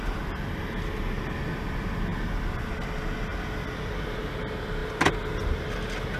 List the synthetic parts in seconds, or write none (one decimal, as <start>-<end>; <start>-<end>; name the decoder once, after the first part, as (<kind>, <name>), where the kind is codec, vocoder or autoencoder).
none